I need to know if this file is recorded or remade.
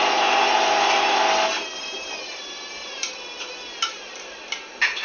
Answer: recorded